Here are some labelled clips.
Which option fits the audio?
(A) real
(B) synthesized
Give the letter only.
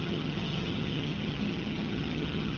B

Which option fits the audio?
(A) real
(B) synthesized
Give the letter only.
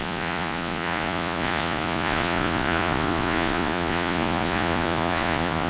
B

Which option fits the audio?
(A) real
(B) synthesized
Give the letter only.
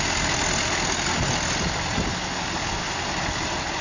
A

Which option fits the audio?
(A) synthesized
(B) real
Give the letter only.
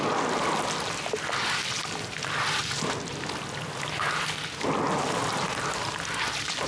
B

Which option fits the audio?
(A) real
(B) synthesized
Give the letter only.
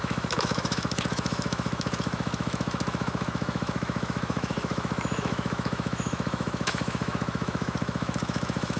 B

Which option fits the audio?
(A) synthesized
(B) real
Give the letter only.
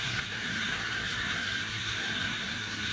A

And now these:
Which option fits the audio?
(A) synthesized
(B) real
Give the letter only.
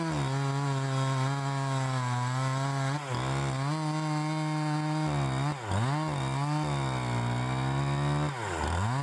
B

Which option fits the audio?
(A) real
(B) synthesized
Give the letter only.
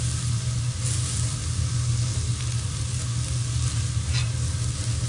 A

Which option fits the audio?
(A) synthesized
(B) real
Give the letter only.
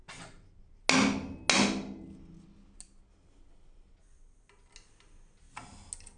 B